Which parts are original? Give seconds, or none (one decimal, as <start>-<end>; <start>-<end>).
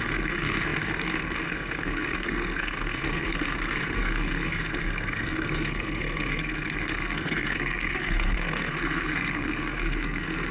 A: none